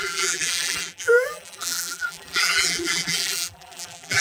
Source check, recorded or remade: remade